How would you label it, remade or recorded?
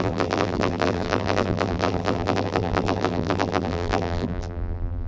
remade